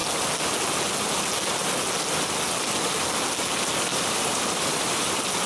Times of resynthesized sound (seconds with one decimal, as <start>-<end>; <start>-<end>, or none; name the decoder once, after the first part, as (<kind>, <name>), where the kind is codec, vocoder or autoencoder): 3.9-5.1 (vocoder, BigVGAN v2)